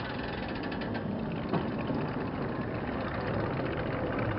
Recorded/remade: recorded